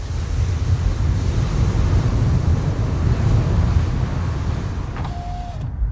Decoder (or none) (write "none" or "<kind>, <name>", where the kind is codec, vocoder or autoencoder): none